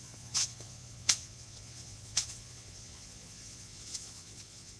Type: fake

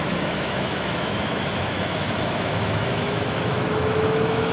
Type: fake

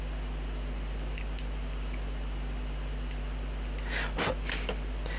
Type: real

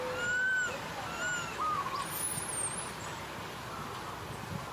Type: real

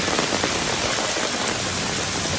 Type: real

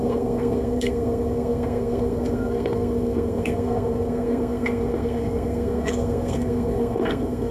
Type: fake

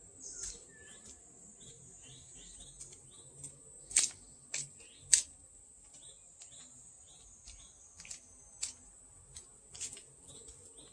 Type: real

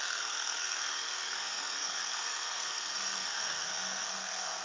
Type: fake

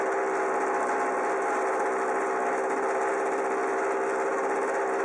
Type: real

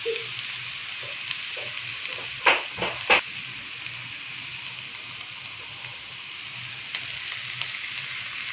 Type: real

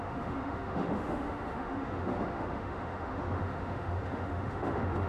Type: fake